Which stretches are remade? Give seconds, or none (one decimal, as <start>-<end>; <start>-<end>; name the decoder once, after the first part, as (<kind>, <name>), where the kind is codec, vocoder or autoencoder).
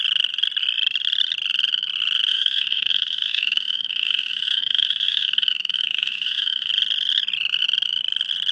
2.3-6.7 (autoencoder, DAC-VAE)